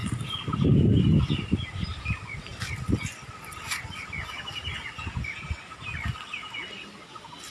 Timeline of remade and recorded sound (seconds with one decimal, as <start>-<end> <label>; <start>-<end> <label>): 0.0-7.5 recorded